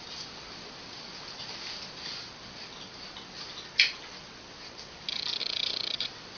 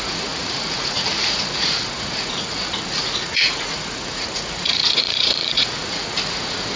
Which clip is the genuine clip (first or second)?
first